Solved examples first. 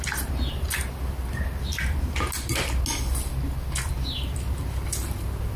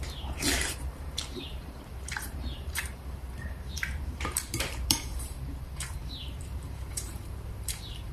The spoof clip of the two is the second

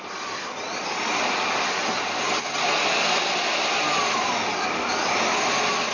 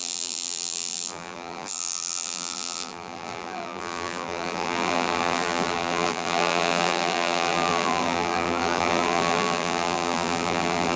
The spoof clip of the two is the second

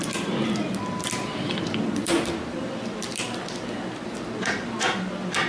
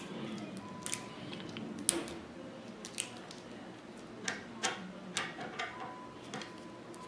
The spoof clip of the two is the first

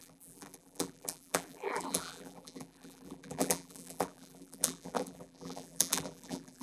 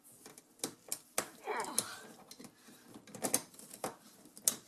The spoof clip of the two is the first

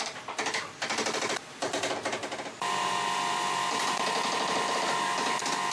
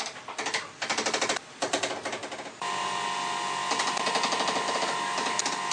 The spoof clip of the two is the first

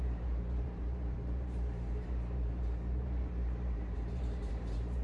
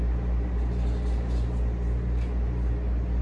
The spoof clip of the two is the first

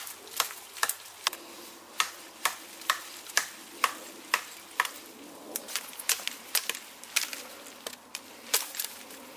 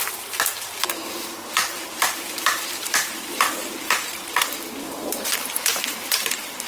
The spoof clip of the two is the second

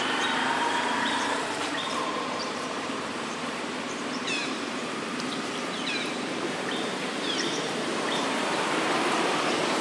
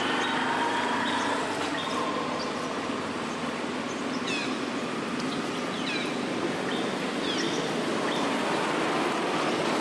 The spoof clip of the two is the first